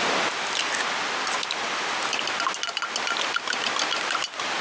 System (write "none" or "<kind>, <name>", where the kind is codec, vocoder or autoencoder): none